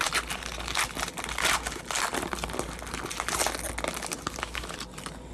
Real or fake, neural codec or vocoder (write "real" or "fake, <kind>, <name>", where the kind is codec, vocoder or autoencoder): real